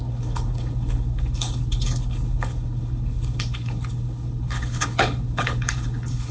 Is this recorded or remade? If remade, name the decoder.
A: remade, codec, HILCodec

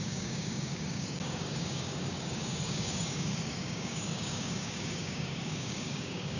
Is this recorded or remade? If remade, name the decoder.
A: remade, codec, DAC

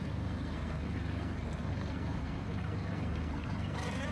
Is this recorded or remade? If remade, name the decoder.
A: remade, codec, SNAC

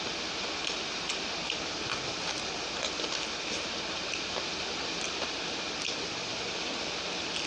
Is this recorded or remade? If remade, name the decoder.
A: recorded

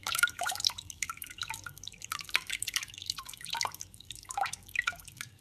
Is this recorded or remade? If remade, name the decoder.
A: remade, codec, DAC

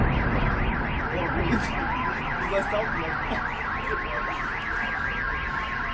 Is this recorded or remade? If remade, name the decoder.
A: recorded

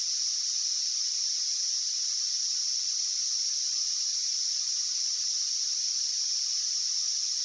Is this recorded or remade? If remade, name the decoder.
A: recorded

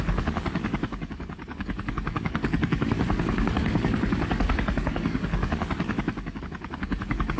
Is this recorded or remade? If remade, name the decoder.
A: remade, codec, DAC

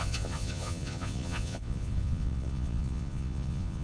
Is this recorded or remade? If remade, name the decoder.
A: remade, vocoder, Vocos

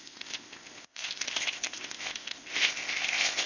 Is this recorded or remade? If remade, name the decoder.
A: remade, codec, ZipCodec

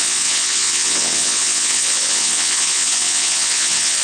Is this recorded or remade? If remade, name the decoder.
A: remade, vocoder, WaveNeXt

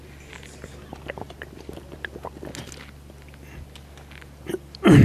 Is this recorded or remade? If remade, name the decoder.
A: recorded